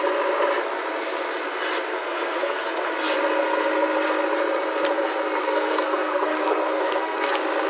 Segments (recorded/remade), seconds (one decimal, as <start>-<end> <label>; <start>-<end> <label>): 0.0-1.9 recorded; 1.9-2.6 remade; 2.6-5.4 recorded; 5.4-7.3 remade; 7.3-7.7 recorded